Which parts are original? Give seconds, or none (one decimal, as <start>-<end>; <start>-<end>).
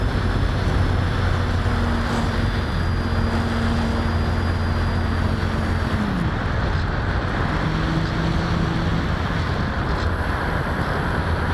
0.0-11.5